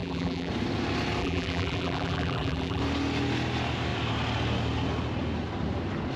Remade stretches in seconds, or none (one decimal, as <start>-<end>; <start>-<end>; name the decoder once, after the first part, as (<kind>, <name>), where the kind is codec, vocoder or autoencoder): 0.0-0.5 (vocoder, BigVGAN v2); 1.2-2.8